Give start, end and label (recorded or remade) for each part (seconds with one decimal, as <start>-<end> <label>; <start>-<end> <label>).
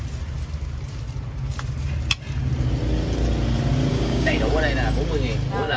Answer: 0.0-3.9 recorded; 3.9-4.4 remade; 4.4-5.8 recorded